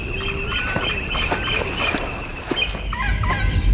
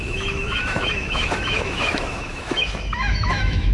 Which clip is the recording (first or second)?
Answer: first